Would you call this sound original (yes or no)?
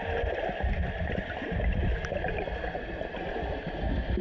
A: yes